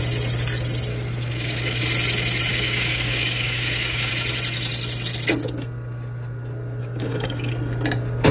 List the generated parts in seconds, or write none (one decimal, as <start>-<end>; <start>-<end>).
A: 0.9-1.8; 2.5-4.1; 6.8-7.5